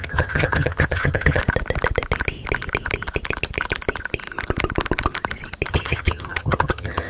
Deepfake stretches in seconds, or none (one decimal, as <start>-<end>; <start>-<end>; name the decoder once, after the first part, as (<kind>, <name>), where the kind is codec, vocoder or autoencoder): 0.0-1.4 (vocoder, HiFi-GAN); 5.7-7.1